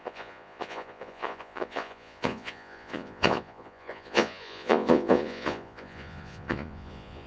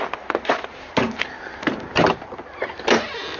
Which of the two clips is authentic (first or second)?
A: second